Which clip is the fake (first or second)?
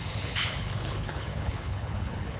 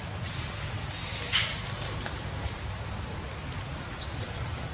first